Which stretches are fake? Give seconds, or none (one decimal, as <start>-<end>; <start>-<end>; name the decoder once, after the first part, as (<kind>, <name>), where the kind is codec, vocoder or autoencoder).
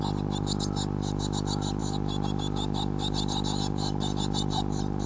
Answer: none